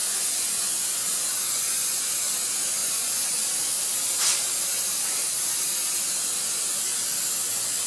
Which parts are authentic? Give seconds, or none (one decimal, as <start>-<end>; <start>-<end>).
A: 2.0-2.8; 3.4-7.9